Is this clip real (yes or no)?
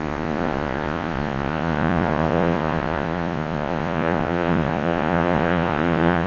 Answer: no